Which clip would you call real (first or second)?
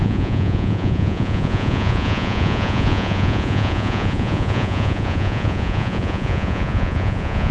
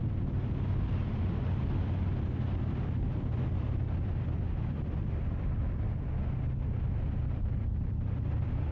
second